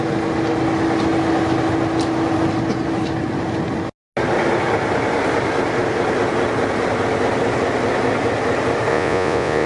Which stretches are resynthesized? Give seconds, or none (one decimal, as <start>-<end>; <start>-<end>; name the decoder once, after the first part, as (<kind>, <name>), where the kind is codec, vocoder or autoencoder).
8.9-9.7 (vocoder, Vocos)